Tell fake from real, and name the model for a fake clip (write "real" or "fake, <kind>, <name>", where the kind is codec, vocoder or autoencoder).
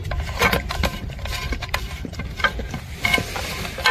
real